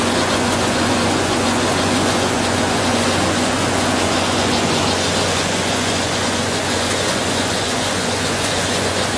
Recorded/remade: remade